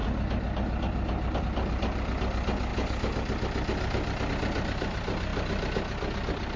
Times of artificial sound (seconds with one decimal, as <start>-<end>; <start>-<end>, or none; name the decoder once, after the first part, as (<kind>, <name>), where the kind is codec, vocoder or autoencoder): none